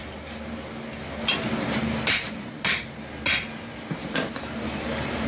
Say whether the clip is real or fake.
real